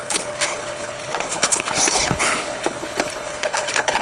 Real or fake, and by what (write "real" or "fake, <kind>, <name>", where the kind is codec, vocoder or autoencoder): fake, codec, HILCodec